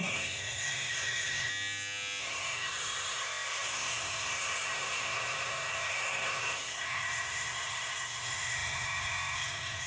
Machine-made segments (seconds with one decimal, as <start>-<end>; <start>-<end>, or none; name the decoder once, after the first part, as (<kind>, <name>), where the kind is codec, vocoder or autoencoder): 0.0-1.5 (codec, SNAC); 2.2-9.9